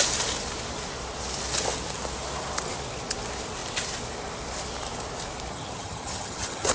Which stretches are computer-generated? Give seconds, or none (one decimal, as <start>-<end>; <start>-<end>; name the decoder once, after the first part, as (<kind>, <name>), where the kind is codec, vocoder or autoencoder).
5.5-6.7 (vocoder, HiFi-GAN)